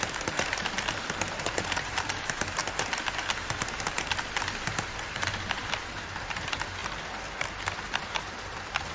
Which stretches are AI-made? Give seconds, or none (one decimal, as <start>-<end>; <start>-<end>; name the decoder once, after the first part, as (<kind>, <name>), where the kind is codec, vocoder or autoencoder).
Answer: 0.0-2.6 (vocoder, BigVGAN v2); 6.2-6.8; 8.1-8.9